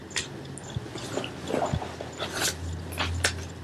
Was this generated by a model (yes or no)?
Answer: no